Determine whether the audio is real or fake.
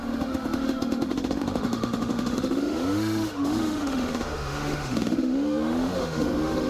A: fake